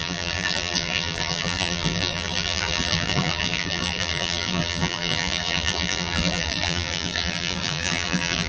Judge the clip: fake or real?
fake